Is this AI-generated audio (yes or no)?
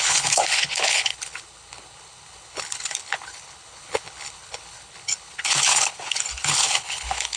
yes